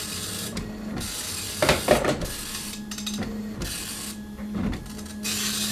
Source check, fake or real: real